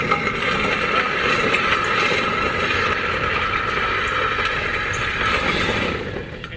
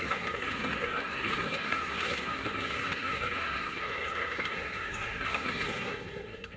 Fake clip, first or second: second